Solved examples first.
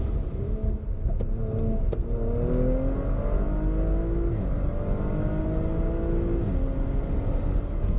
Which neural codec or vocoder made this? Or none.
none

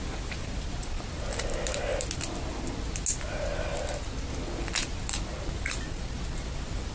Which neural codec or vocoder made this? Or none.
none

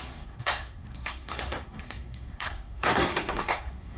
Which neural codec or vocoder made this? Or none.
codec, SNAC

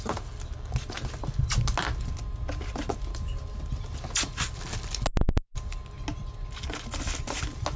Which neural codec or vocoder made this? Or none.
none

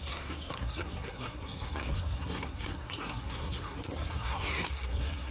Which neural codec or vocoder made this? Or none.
codec, SNAC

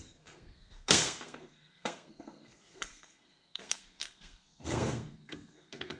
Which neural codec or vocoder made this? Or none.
codec, SNAC